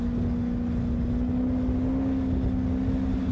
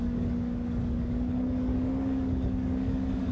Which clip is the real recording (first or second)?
first